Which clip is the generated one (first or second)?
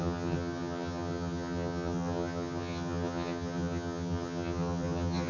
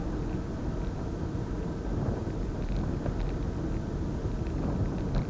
first